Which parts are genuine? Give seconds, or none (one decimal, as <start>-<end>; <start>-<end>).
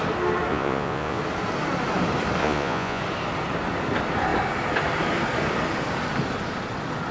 0.0-0.5; 1.2-2.4; 3.0-7.1